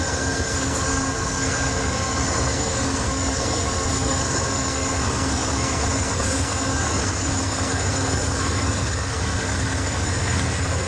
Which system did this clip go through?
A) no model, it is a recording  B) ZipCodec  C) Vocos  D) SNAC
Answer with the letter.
D